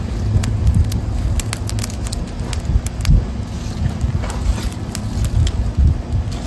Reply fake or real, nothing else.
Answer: real